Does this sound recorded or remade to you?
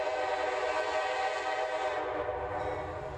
recorded